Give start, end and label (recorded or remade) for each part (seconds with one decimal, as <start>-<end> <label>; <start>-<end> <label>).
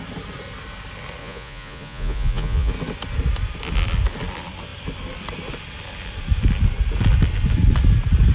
0.0-1.2 recorded; 1.2-2.7 remade; 2.7-8.3 recorded